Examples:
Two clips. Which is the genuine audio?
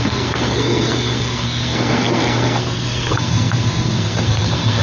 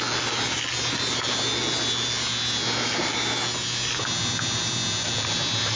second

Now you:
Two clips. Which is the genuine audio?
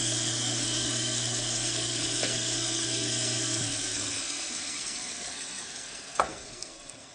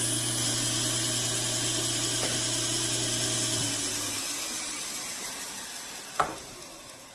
second